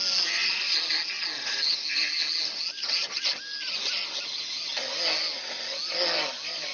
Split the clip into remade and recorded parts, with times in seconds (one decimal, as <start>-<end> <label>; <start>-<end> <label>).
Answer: 0.0-6.7 recorded